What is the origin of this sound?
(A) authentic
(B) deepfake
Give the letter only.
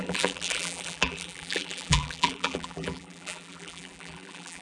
B